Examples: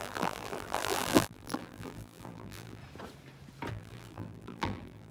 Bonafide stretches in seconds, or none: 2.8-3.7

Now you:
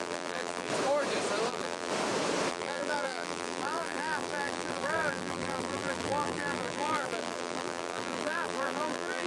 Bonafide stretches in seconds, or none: 0.7-1.5; 1.9-2.5

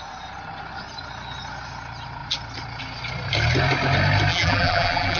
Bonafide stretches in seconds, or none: 0.0-4.3

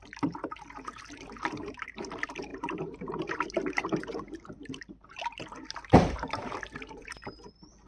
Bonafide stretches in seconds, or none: none

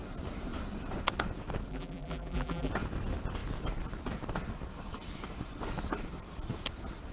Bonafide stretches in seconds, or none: 0.0-1.7; 2.7-7.1